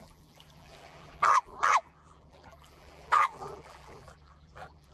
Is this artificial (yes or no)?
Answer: yes